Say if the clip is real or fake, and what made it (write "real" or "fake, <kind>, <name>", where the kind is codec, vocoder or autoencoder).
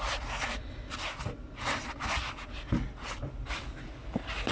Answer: real